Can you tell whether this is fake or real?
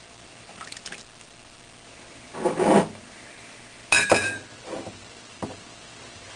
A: real